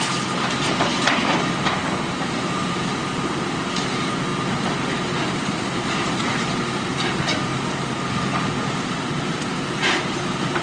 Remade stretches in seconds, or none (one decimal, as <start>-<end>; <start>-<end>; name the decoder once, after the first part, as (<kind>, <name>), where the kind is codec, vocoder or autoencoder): 0.0-4.3 (vocoder, BigVGAN v2); 5.8-7.5; 8.8-10.6